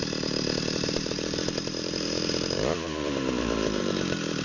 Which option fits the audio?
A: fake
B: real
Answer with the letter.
A